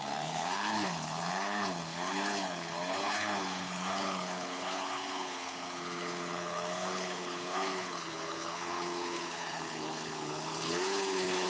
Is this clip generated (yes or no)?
yes